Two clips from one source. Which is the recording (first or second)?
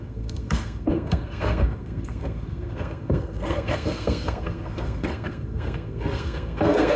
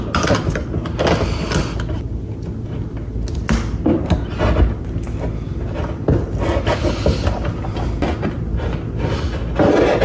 second